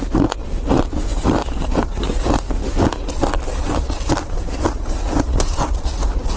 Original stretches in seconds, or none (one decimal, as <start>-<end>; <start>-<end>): 0.0-1.1; 2.0-6.4